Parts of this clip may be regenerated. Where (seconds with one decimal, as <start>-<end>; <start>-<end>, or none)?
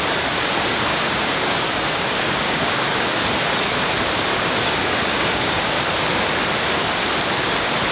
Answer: 0.9-3.4; 4.3-5.7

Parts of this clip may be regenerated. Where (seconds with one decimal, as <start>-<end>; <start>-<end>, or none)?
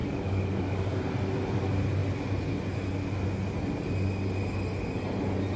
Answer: 0.0-1.0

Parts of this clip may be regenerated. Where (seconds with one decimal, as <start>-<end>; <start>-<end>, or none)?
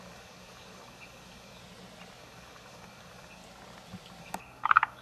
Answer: 0.0-1.6; 2.2-3.4; 4.2-5.0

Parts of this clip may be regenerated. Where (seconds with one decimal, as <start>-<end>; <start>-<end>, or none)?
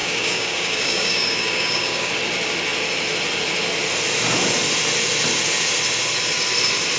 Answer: 0.0-2.1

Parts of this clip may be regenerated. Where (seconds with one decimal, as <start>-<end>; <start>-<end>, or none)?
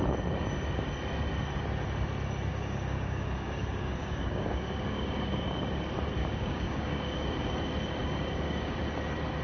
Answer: 2.5-5.8; 6.2-7.5; 8.0-8.8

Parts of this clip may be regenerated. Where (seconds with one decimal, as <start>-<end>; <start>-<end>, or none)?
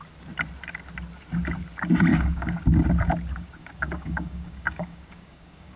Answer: 2.1-2.6; 3.3-5.8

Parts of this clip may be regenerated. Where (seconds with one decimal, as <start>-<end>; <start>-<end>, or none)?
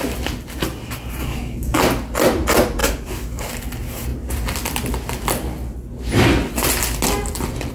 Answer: 1.2-1.8; 2.8-3.5